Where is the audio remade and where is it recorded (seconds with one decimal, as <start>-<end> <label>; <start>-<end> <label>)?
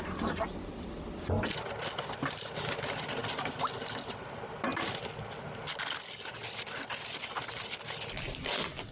0.0-8.9 recorded